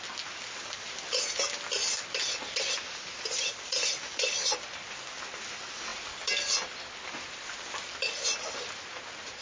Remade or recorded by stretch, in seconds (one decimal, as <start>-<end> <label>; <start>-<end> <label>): 0.0-9.4 recorded